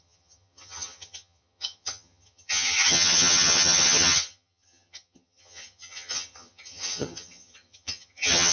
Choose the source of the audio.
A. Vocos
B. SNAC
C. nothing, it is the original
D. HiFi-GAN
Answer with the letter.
D